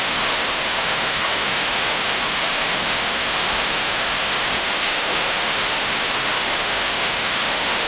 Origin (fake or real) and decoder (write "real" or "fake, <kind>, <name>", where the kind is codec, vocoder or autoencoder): fake, autoencoder, DAC-VAE